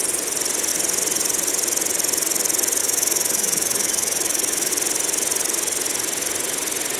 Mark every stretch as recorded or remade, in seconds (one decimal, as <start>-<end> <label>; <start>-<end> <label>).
0.0-2.8 recorded; 2.8-4.7 remade; 4.7-7.0 recorded